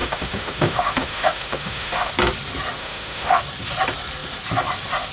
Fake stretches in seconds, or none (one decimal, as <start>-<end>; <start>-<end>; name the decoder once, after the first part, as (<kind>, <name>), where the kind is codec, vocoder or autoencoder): 0.0-2.1 (autoencoder, DAC-VAE); 2.8-3.4